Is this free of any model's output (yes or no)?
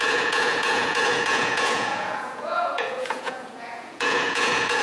no